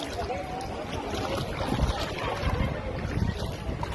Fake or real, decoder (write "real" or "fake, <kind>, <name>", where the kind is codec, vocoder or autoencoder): real